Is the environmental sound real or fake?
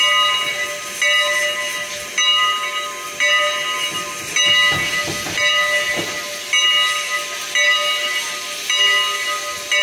real